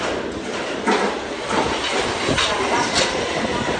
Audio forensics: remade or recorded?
recorded